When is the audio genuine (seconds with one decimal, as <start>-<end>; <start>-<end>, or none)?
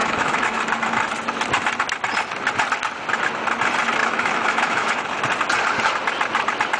0.6-4.0; 5.0-6.8